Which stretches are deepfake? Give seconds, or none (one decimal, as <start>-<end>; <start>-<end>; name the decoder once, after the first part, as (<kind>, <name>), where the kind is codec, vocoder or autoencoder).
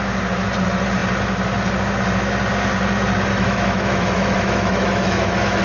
3.3-5.6 (autoencoder, DAC-VAE)